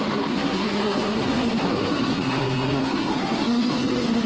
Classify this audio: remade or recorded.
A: remade